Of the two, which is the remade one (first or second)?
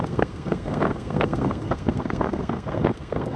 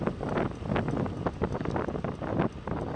first